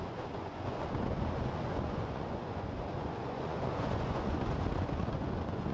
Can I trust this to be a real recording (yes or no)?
no